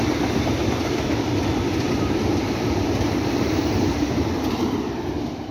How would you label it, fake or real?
fake